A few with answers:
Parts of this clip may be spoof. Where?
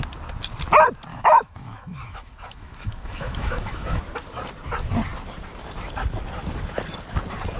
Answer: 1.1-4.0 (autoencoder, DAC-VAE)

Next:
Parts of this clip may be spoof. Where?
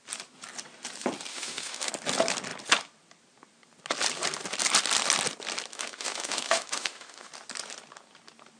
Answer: 1.3-1.9 (autoencoder, DAC-VAE); 5.7-7.3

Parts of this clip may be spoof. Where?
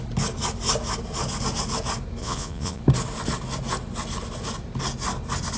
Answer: 2.2-2.8 (vocoder, Vocos)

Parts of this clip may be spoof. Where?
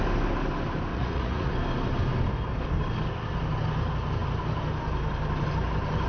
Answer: 0.9-1.5 (vocoder, Vocos)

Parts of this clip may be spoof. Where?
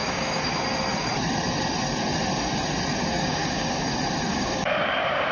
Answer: 0.0-0.6 (codec, DAC); 3.2-3.8; 4.3-5.3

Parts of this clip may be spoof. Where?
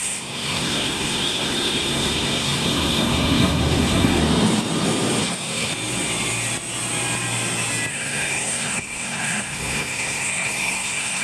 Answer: 0.0-4.2 (codec, SNAC); 5.2-5.7; 7.9-11.2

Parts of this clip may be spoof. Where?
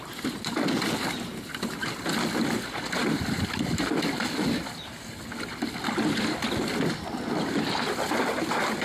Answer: none